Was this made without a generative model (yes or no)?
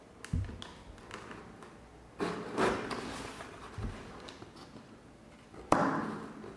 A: yes